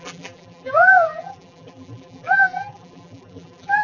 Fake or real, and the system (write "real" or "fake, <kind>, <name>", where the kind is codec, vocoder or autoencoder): fake, vocoder, BigVGAN v2